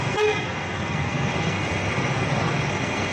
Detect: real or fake fake